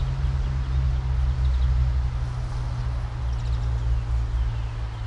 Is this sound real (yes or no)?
yes